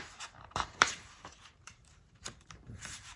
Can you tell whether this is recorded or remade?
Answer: remade